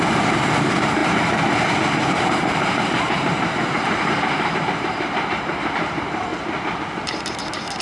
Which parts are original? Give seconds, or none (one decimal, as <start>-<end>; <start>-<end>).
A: 6.3-7.8